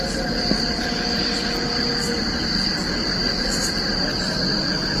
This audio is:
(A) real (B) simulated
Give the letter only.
A